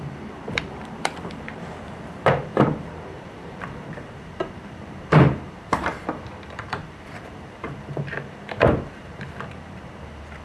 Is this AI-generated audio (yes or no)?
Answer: yes